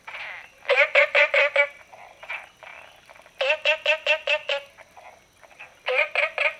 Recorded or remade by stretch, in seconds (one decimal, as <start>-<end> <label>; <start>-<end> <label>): 0.0-6.6 recorded